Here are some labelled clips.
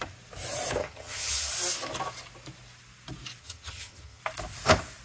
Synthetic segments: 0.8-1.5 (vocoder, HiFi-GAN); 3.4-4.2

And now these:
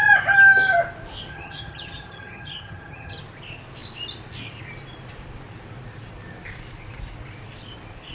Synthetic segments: 1.3-3.2 (vocoder, HiFi-GAN)